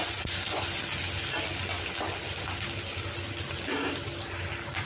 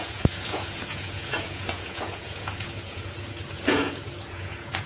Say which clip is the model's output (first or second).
second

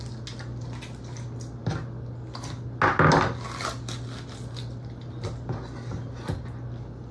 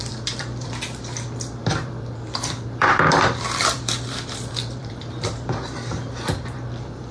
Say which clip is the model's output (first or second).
second